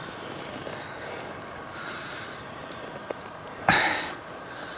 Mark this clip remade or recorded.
recorded